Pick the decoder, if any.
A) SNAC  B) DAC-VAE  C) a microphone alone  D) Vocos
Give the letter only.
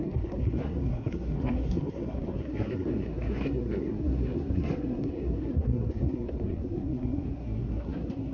A